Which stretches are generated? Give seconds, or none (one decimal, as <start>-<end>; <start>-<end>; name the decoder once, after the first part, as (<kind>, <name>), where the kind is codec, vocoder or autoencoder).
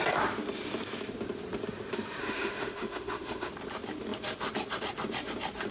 2.2-3.5 (autoencoder, DAC-VAE)